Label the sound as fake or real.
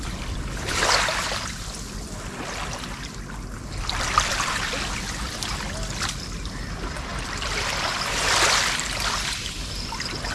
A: real